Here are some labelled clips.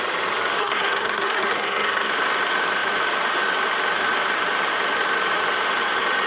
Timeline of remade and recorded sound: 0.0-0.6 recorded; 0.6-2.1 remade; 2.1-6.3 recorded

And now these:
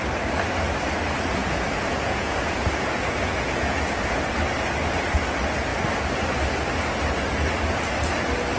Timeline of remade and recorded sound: 0.0-1.4 recorded; 1.4-4.2 remade; 4.2-8.6 recorded

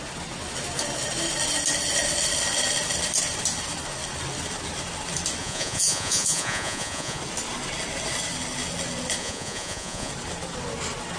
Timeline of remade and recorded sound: 0.0-5.4 recorded; 5.4-7.2 remade; 7.2-9.2 recorded; 9.2-10.1 remade; 10.1-11.2 recorded